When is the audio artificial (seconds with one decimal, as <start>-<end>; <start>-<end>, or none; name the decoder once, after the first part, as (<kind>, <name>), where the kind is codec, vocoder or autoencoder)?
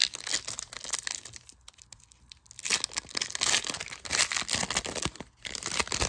none